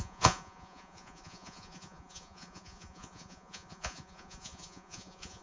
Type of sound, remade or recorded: remade